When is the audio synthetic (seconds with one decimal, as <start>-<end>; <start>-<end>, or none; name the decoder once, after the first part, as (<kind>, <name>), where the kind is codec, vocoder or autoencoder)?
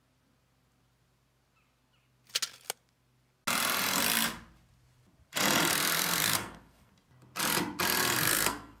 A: 5.7-6.9 (codec, SNAC); 8.0-8.8